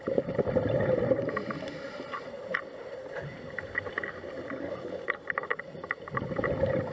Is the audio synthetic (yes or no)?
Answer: no